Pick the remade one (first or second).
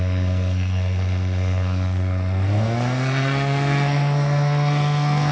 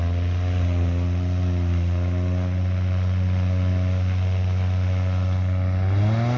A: first